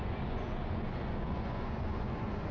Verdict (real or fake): fake